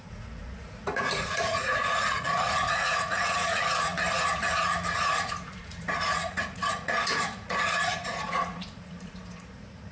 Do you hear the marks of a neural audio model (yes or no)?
yes